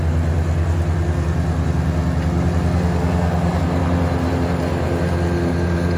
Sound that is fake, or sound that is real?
real